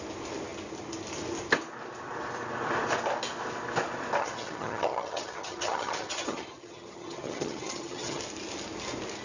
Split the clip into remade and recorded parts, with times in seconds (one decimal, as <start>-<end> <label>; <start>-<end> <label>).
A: 0.0-4.2 recorded; 4.2-8.2 remade; 8.2-9.2 recorded